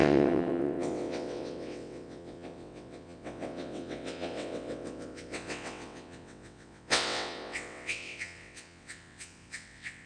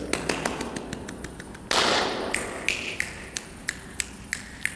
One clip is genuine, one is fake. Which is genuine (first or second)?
second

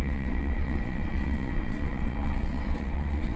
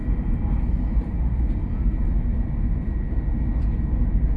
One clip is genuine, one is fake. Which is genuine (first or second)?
second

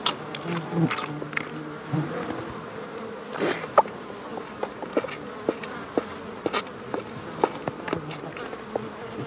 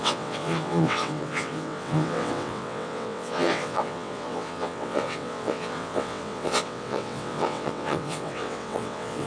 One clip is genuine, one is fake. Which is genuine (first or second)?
first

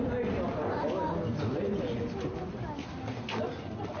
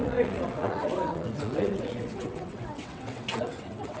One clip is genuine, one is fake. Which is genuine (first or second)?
first